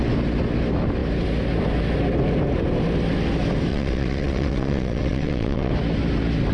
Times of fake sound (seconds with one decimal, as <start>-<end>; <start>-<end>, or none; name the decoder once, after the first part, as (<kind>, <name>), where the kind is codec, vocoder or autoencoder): 3.7-5.7 (vocoder, WaveNeXt)

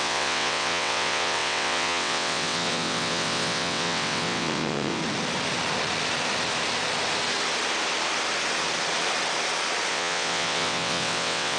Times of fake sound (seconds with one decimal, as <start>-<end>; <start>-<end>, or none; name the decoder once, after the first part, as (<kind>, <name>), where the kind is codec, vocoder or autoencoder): 0.0-5.0 (vocoder, WaveNeXt); 9.9-11.6

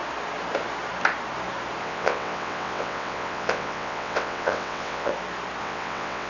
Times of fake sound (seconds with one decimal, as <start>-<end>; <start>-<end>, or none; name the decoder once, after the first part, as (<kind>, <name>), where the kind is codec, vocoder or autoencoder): 1.8-5.1 (vocoder, WaveNeXt); 5.6-6.3